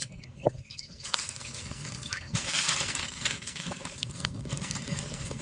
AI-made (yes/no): yes